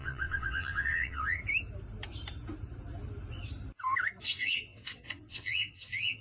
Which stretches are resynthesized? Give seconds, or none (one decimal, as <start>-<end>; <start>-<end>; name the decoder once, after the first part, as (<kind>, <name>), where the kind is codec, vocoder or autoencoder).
0.0-1.4 (vocoder, WaveNeXt); 4.2-6.2